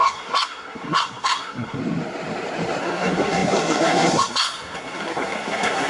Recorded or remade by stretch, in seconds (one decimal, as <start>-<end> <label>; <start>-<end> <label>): 0.0-1.8 remade; 1.8-2.8 recorded; 2.8-5.9 remade